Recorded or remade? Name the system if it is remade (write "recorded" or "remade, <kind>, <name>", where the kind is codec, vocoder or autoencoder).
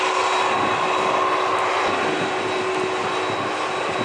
recorded